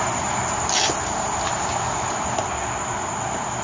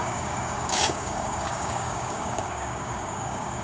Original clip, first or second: first